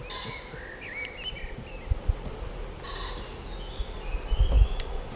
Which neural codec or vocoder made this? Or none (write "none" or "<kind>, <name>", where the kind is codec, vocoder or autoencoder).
none